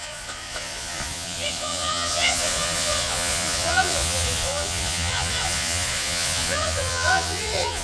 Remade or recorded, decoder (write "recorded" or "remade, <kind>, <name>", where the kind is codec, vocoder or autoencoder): remade, vocoder, Vocos